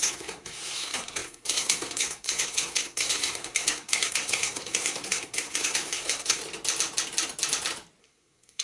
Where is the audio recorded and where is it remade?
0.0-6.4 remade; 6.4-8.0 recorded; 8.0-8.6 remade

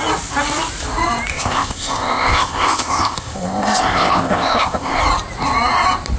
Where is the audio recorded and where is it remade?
0.0-1.3 recorded; 1.3-5.0 remade; 5.0-6.2 recorded

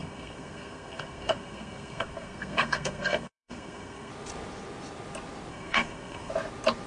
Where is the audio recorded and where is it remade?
0.0-4.1 remade; 4.1-5.5 recorded; 5.5-6.3 remade; 6.3-6.9 recorded